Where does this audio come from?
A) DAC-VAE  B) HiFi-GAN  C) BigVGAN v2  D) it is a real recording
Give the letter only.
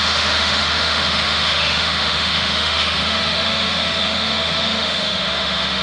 A